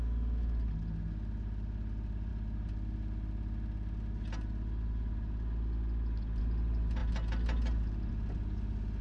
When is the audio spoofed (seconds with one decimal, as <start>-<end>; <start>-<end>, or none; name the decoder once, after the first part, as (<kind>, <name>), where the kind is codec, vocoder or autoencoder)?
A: none